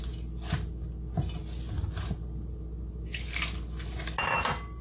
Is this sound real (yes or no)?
yes